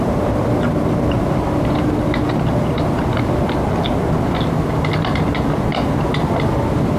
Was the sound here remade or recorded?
recorded